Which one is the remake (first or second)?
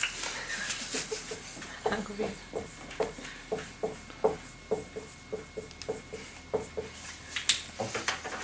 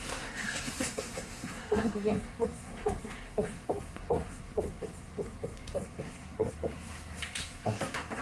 second